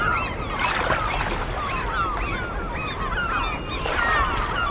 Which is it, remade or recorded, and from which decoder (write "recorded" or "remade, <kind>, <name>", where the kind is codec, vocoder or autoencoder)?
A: recorded